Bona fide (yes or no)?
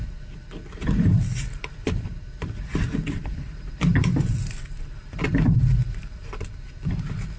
no